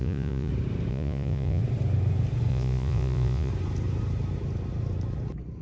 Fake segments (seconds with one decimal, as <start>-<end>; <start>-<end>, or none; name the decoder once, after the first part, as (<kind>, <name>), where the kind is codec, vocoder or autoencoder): 0.0-0.5 (vocoder, Vocos); 0.9-1.6; 2.5-3.5